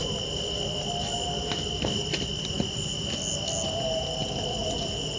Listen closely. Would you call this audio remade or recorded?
recorded